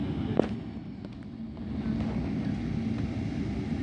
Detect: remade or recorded recorded